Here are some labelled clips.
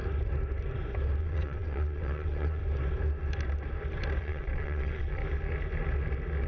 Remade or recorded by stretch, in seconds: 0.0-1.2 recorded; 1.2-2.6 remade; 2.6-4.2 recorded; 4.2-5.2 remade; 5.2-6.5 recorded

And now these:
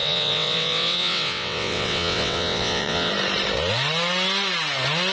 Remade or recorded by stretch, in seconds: 0.0-3.1 remade; 3.1-5.1 recorded

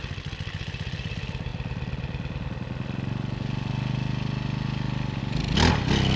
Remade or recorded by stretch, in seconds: 0.0-6.2 recorded

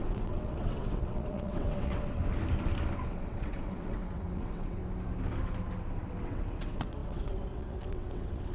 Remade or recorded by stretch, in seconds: 0.0-2.2 remade; 2.2-3.1 recorded; 3.1-4.8 remade; 4.8-6.2 recorded; 6.2-8.5 remade